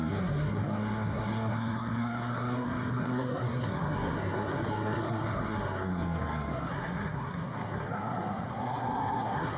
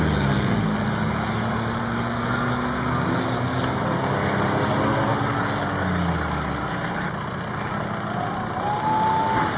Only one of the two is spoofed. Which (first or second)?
first